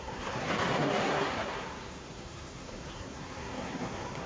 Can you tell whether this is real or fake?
fake